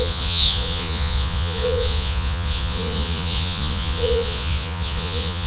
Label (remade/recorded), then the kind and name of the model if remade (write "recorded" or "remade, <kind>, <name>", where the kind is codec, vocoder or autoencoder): remade, vocoder, Vocos